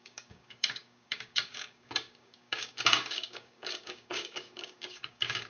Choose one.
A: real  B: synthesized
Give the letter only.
B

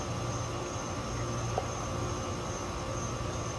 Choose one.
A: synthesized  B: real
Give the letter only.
B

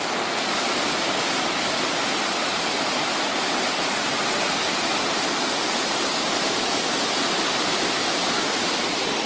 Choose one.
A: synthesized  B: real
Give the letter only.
B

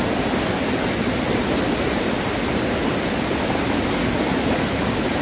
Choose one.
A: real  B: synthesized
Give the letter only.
A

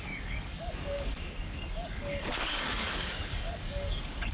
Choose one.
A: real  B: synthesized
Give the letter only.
B